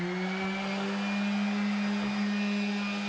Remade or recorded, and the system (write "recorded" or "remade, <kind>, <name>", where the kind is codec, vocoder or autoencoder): recorded